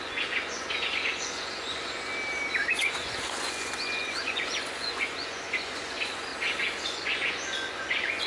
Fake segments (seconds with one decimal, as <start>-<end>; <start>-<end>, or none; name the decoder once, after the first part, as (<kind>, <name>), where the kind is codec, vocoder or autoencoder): 0.0-2.1 (vocoder, Vocos); 2.7-6.3; 6.8-8.3